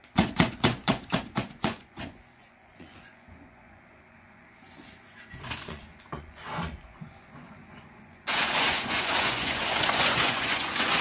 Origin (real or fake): fake